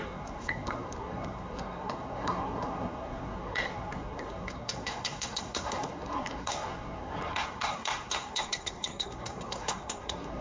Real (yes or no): no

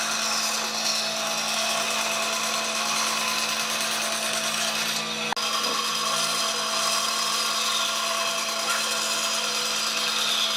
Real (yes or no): yes